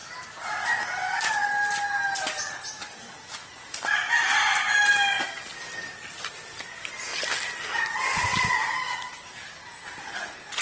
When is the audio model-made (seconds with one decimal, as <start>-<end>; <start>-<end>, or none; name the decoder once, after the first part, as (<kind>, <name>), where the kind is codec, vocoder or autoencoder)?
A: none